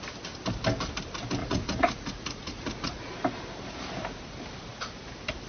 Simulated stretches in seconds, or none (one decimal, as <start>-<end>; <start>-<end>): 1.4-3.1